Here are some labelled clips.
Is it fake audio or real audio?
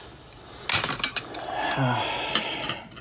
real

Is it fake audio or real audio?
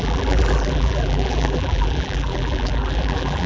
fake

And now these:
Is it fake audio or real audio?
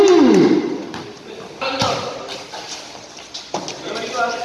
real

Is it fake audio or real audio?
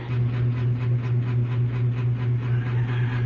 real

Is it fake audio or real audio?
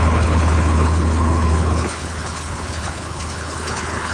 fake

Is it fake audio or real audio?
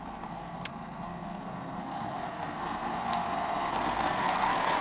fake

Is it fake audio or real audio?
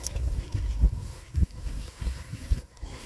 fake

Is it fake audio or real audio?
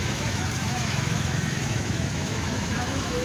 fake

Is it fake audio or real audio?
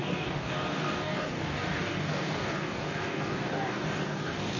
fake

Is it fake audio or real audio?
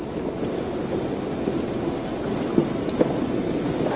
real